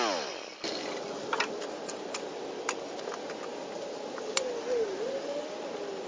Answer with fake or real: real